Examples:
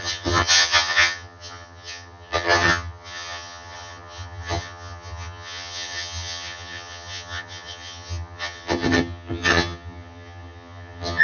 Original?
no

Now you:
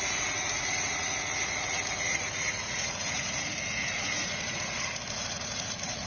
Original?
no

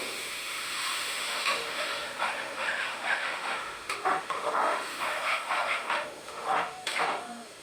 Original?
no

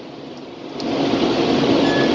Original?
yes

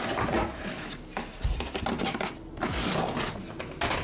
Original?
yes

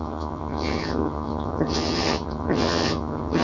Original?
no